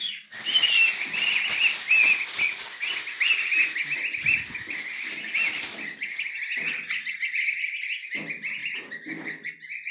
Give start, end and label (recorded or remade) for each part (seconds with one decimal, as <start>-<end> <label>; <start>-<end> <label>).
0.0-9.9 recorded